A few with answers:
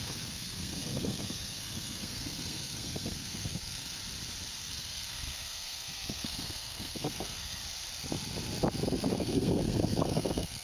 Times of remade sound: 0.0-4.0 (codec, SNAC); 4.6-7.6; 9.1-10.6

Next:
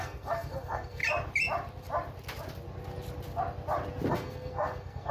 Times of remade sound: 0.0-1.0 (codec, SNAC); 4.1-5.1

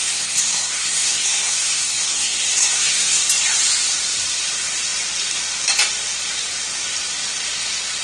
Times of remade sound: 0.0-3.2 (codec, SNAC)

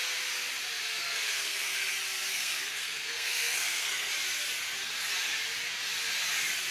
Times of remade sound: 0.9-1.9 (codec, SNAC); 2.3-4.1

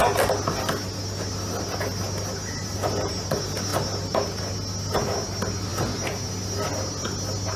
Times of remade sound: none

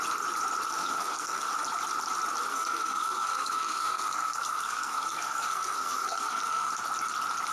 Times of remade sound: 0.8-1.5 (codec, SNAC); 2.5-6.7

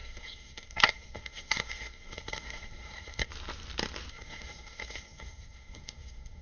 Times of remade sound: 0.0-3.3 (codec, SNAC); 4.1-6.4

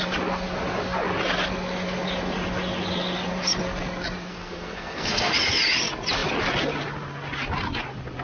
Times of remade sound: 4.3-5.3 (codec, SNAC)